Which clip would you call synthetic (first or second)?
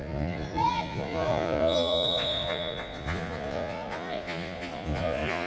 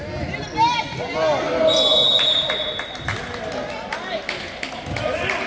first